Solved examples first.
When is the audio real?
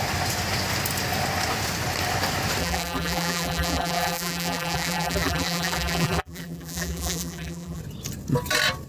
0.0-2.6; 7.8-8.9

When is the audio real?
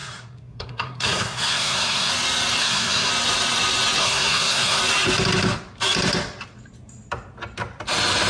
2.1-2.6; 3.1-4.0; 4.8-8.3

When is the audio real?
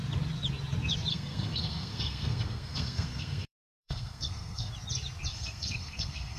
0.0-1.1; 4.7-5.3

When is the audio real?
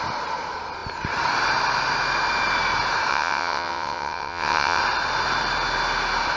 0.0-3.1; 4.8-6.4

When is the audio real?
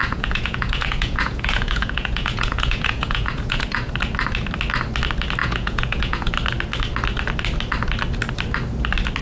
3.9-5.4; 6.3-9.2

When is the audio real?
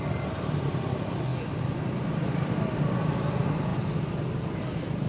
1.3-2.2; 3.7-4.6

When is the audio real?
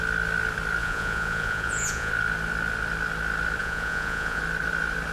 0.0-0.8; 2.1-3.6; 4.4-5.1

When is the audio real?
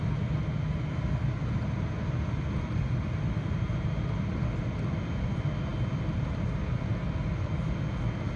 0.0-8.4